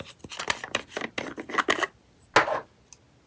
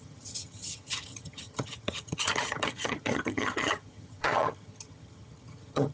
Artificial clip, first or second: second